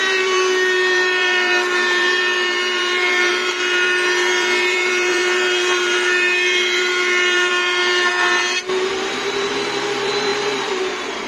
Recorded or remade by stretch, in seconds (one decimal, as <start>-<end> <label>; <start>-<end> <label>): 0.0-11.3 remade